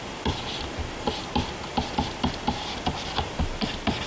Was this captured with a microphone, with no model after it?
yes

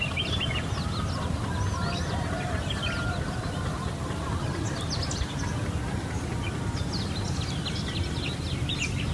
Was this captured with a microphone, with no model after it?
yes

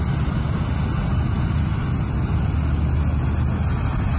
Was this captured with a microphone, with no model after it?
yes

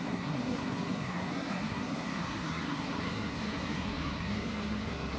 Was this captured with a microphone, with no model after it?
no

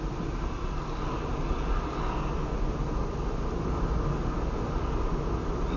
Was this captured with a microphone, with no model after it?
yes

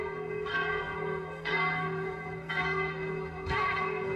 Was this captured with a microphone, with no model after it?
no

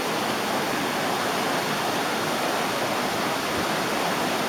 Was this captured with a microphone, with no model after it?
yes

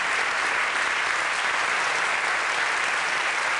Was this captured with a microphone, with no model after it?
yes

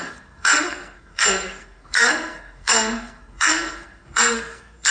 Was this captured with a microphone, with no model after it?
no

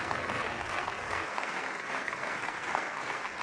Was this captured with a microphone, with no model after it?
no